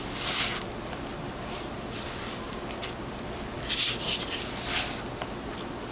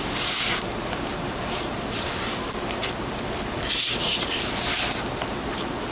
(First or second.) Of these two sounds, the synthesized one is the second